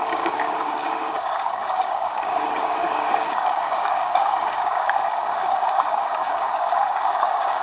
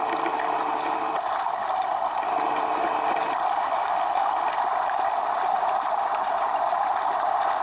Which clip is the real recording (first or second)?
second